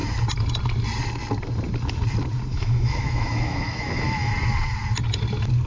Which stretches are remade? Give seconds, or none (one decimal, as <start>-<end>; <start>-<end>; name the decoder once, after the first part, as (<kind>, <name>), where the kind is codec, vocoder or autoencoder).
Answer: 2.5-4.3 (autoencoder, DAC-VAE)

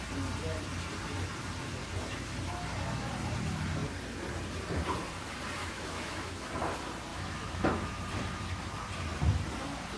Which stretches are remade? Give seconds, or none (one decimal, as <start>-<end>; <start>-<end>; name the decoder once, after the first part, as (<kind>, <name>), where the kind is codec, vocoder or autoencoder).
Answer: 5.6-6.5 (autoencoder, DAC-VAE); 7.1-8.0

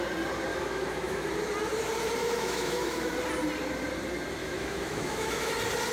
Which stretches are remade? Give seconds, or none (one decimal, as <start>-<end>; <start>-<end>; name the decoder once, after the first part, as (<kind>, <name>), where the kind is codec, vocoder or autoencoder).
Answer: 0.5-1.3 (autoencoder, DAC-VAE); 2.2-3.1; 4.4-5.5

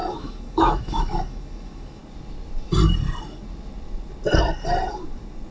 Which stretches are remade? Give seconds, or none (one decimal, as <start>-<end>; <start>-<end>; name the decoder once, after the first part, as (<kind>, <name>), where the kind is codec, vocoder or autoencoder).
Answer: 0.0-2.0 (autoencoder, DAC-VAE)